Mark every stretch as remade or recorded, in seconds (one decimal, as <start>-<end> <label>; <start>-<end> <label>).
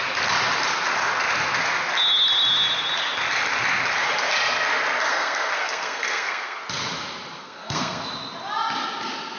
0.0-5.1 recorded; 5.1-6.6 remade; 6.6-7.4 recorded; 7.4-8.0 remade; 8.0-9.4 recorded